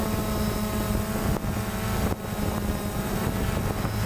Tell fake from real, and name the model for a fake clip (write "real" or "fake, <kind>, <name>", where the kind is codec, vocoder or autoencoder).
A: real